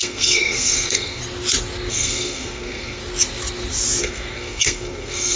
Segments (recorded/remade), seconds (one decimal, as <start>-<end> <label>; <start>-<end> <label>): 0.0-1.2 remade; 1.2-1.9 recorded; 1.9-3.0 remade; 3.0-4.0 recorded; 4.0-5.4 remade